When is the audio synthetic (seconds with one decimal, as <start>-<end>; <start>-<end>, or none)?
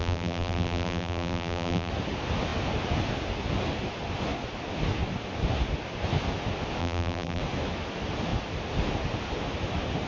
0.0-1.9; 6.8-7.4